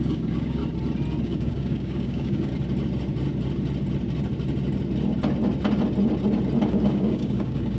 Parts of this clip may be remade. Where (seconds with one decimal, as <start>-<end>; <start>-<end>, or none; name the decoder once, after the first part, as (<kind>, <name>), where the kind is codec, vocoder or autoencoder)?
0.0-0.6 (codec, DAC); 1.2-2.5; 6.7-7.8